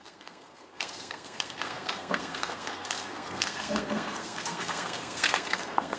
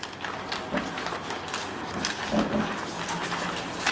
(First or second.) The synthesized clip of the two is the first